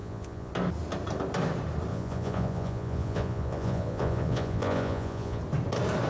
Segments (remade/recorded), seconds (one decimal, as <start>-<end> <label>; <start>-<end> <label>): 0.0-0.5 remade; 0.5-1.9 recorded; 1.9-5.4 remade; 5.4-6.1 recorded